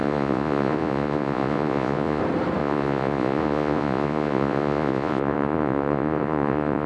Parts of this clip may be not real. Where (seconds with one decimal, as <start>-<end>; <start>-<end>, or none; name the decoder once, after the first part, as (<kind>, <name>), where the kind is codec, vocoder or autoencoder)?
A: 0.0-2.2 (vocoder, Vocos); 2.6-6.9